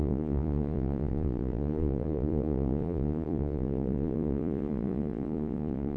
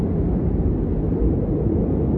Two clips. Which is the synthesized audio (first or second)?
first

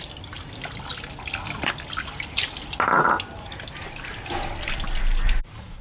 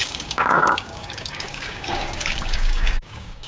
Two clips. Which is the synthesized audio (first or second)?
second